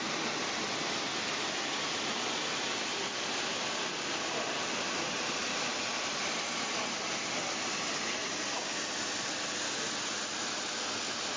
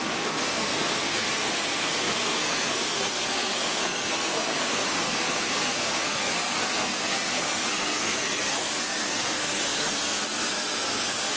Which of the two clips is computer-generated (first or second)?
second